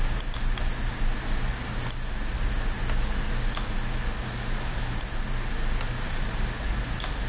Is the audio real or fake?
real